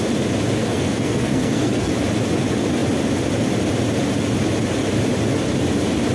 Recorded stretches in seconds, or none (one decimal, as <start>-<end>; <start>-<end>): 0.0-0.6; 1.9-6.1